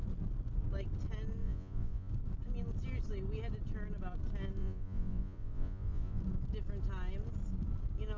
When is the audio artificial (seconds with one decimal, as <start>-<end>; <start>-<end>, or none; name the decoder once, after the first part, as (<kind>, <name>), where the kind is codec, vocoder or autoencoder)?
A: 1.4-2.1 (vocoder, Vocos); 4.6-6.2